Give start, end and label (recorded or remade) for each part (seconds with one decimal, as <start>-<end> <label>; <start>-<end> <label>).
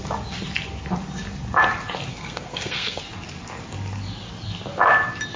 0.0-2.1 recorded; 2.1-3.0 remade; 3.0-5.4 recorded